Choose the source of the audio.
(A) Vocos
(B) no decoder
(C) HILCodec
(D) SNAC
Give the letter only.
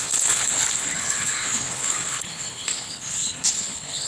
C